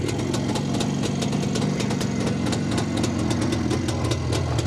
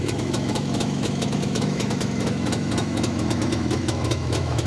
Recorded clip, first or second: first